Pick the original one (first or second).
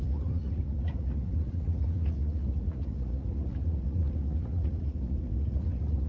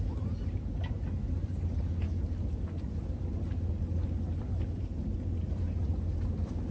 second